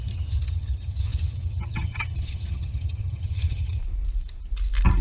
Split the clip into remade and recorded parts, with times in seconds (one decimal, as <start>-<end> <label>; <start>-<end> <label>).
0.0-3.8 remade; 3.8-5.0 recorded